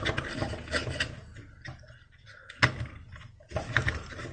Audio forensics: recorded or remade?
recorded